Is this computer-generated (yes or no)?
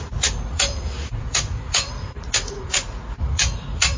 yes